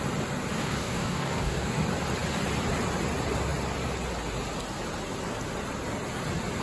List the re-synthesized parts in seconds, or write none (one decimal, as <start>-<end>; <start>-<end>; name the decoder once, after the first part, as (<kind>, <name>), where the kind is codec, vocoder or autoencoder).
0.6-1.8 (codec, DAC)